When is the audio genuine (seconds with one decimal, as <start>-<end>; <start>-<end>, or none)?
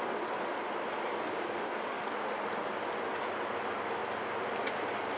0.0-1.0; 2.0-5.2